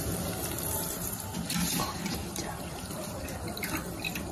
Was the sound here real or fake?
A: fake